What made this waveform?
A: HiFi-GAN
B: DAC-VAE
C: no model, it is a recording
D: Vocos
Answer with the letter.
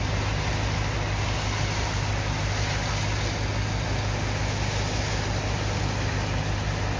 C